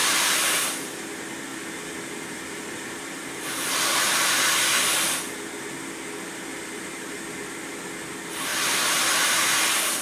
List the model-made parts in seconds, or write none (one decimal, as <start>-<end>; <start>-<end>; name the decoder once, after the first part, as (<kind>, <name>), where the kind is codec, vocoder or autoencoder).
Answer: 0.0-0.9 (vocoder, BigVGAN v2); 1.5-4.4; 6.5-7.2; 8.5-10.0